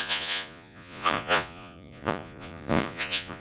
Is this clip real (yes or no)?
no